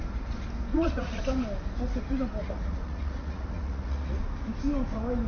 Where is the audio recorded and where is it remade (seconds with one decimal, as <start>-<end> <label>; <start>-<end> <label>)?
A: 0.0-0.7 recorded; 0.7-1.2 remade; 1.2-2.4 recorded; 2.4-4.2 remade; 4.2-5.3 recorded